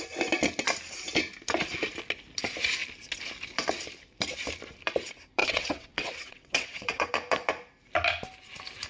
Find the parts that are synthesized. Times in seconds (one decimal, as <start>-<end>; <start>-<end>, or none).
5.4-7.1